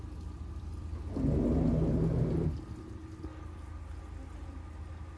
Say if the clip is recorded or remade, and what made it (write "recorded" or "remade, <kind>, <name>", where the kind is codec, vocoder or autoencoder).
recorded